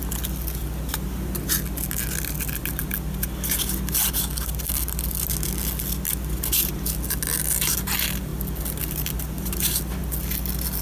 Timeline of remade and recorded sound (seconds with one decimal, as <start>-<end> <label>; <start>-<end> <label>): 0.0-10.8 recorded